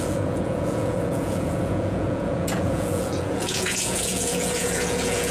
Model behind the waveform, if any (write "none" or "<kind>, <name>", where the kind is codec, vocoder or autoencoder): vocoder, Vocos